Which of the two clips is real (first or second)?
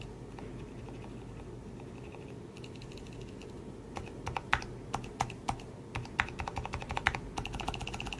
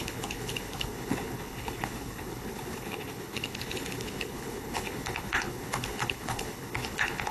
first